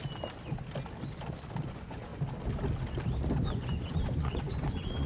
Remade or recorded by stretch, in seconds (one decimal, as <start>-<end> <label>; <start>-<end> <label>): 0.0-1.7 recorded; 1.7-2.1 remade; 2.1-3.4 recorded; 3.4-5.1 remade